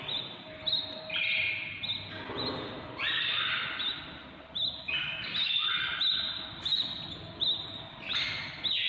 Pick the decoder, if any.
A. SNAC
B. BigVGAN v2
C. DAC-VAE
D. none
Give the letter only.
D